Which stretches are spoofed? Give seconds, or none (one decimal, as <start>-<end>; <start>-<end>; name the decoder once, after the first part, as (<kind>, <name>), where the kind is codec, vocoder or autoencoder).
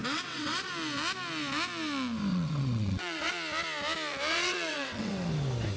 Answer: 0.0-0.7 (vocoder, WaveNeXt); 2.3-3.3; 4.3-5.1